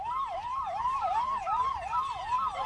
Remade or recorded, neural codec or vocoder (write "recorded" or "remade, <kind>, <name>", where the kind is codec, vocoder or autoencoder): remade, vocoder, BigVGAN v2